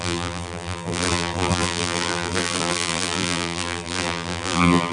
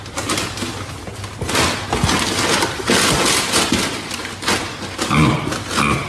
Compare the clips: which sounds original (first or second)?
second